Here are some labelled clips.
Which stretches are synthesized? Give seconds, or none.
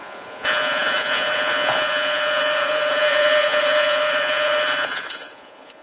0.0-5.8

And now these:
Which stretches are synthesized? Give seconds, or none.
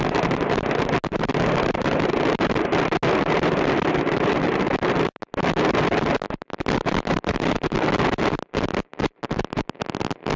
none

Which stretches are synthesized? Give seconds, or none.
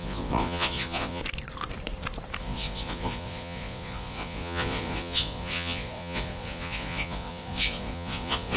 0.0-1.2; 2.4-8.6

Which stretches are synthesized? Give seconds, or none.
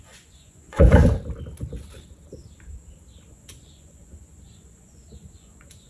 0.0-1.0; 3.3-5.9